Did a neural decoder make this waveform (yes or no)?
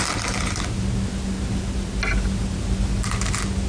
no